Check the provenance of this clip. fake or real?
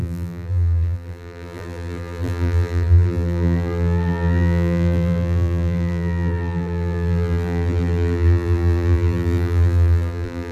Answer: fake